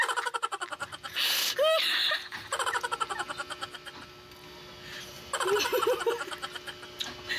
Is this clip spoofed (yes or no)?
no